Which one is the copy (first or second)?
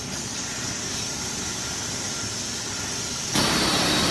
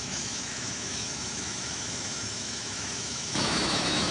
second